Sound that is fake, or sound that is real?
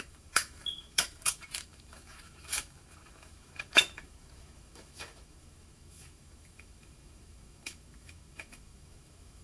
fake